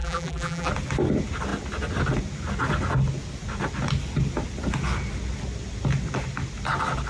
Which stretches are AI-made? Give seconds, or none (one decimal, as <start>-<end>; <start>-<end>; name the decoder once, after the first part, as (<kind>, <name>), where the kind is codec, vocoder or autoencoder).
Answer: 0.0-0.7 (vocoder, BigVGAN v2)